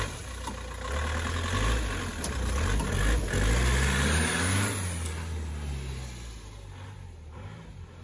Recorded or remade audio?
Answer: recorded